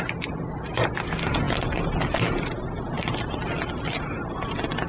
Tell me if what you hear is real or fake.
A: real